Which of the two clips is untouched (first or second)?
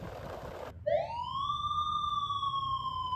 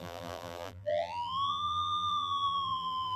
first